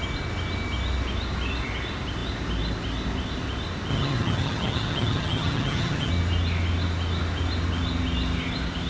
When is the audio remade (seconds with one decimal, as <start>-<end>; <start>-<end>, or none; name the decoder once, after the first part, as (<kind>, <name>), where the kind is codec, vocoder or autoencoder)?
3.9-6.1 (vocoder, HiFi-GAN)